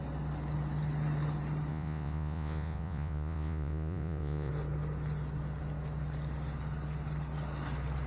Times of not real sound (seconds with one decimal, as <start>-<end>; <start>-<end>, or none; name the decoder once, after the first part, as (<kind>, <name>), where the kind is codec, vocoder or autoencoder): 1.7-4.5 (vocoder, Vocos)